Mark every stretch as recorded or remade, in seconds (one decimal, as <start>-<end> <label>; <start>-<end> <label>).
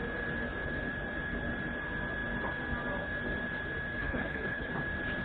0.0-4.0 recorded; 4.0-4.7 remade; 4.7-5.2 recorded